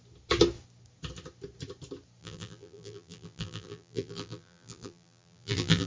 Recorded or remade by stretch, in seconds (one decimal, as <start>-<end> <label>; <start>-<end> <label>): 0.0-2.2 recorded; 2.2-5.9 remade